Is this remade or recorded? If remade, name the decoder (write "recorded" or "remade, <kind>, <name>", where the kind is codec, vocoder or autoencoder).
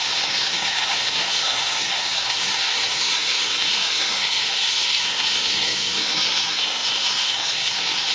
remade, codec, SNAC